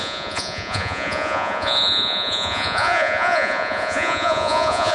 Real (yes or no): no